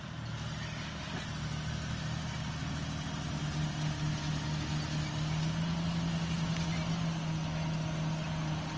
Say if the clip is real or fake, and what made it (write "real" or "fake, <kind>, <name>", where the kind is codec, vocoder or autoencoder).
real